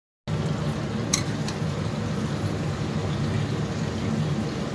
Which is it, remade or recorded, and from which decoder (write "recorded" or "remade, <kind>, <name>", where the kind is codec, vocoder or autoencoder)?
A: recorded